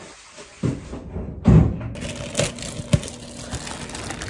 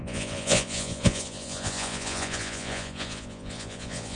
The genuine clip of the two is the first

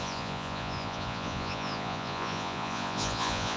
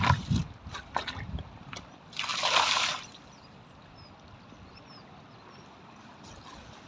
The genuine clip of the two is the second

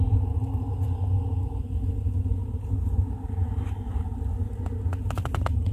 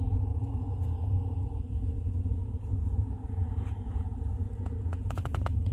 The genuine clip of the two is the first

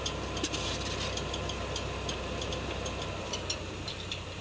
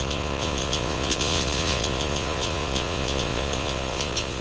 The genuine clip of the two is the first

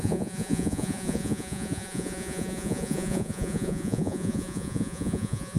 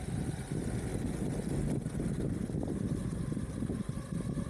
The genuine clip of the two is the second